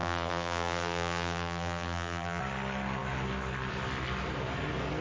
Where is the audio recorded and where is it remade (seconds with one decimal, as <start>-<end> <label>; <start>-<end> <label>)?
0.0-2.4 remade; 2.4-5.0 recorded